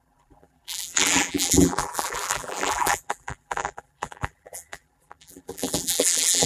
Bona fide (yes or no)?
no